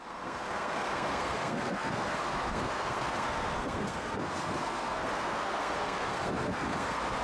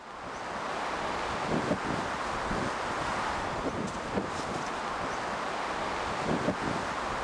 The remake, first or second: first